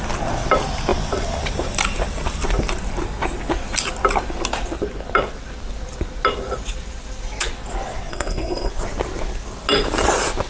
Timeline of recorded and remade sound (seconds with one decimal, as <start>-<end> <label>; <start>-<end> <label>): 0.0-8.1 recorded; 8.1-8.7 remade; 8.7-10.5 recorded